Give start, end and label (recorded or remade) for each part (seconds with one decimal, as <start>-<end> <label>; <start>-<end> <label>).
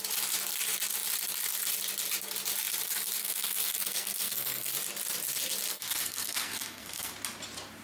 0.0-3.2 recorded; 3.2-4.7 remade; 4.7-5.7 recorded; 5.7-7.1 remade; 7.1-7.8 recorded